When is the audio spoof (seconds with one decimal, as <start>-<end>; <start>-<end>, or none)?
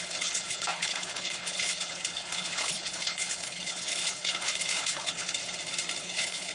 0.0-5.4; 6.0-6.5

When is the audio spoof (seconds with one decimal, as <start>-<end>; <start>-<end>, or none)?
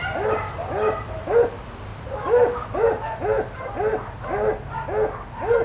1.9-3.0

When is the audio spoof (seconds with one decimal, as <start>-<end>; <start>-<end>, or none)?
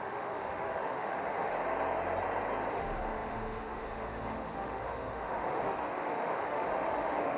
0.0-1.5; 2.7-7.4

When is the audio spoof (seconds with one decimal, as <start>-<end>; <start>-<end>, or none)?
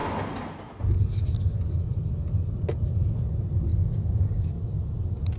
3.7-4.4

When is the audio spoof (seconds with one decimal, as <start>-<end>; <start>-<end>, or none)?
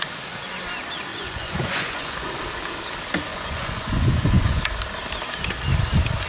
1.1-2.3; 3.3-4.6